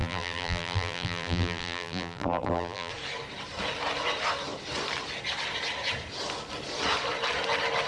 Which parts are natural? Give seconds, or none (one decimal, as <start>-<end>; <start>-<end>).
2.9-7.9